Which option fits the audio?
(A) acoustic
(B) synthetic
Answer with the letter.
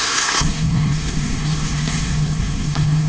B